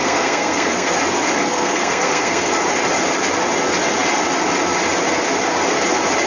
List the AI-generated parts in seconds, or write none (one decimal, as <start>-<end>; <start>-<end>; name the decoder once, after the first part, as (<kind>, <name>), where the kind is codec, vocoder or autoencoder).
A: 0.0-1.0 (codec, SNAC); 1.4-2.5